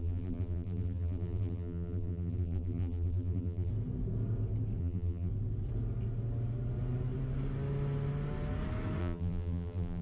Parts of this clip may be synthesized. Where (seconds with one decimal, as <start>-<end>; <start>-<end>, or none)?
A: 0.0-3.7; 4.8-5.3; 9.0-10.0